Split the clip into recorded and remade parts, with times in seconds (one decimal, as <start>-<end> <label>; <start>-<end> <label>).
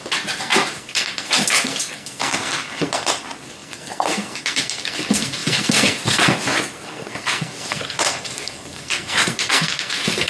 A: 0.0-10.3 remade